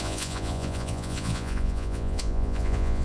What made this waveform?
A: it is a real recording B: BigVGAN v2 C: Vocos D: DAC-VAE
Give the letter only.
C